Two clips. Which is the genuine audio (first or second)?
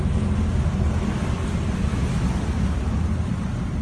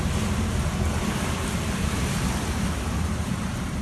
first